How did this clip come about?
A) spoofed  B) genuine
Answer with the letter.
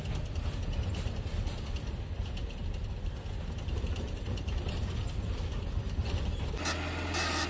B